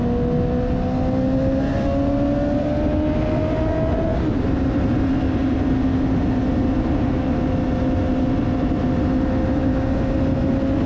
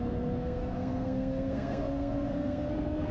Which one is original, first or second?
first